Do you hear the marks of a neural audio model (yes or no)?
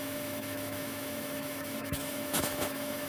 yes